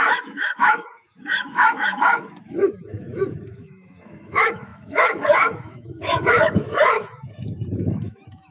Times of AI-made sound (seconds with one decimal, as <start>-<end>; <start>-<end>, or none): 0.0-8.5